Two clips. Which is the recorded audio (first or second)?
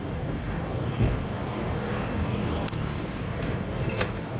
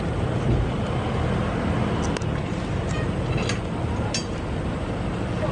second